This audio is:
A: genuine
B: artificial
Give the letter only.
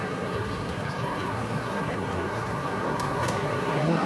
B